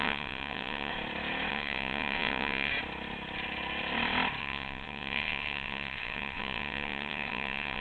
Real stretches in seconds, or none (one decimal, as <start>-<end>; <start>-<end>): 0.9-1.5; 2.7-4.4